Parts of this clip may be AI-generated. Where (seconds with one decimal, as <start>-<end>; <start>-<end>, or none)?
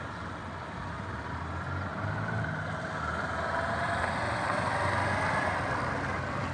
none